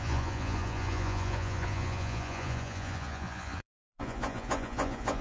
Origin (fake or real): fake